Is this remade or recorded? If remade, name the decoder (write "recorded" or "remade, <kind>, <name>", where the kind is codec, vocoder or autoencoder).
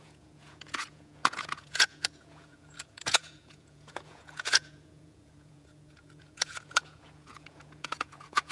remade, vocoder, Vocos